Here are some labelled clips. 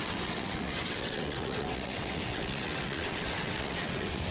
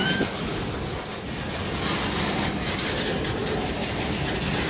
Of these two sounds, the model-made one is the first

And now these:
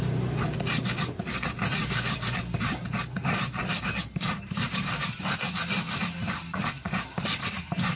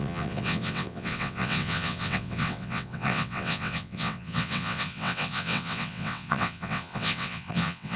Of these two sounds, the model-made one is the second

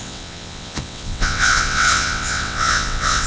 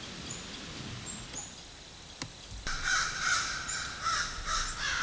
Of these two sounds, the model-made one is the first